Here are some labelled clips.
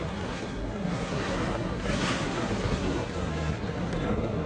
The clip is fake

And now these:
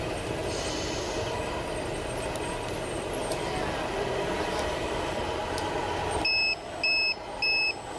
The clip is real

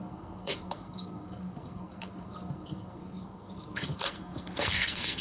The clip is fake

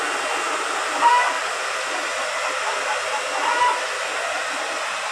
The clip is real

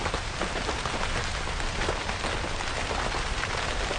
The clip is real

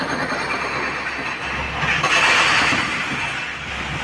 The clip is real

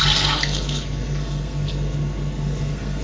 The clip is fake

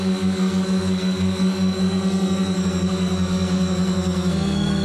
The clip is fake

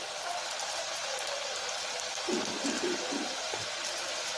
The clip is real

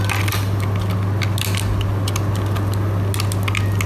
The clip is real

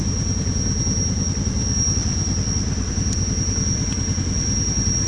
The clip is real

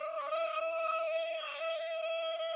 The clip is fake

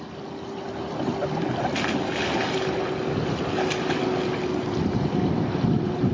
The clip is real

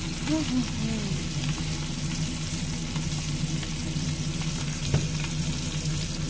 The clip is real